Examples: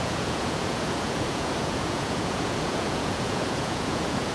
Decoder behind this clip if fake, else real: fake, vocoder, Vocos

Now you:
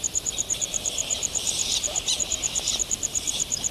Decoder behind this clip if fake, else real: fake, vocoder, BigVGAN v2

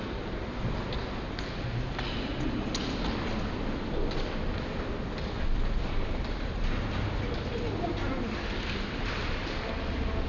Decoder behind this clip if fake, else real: real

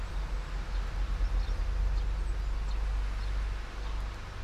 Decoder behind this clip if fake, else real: real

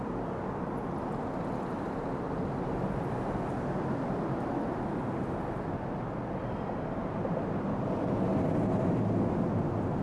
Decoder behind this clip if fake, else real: real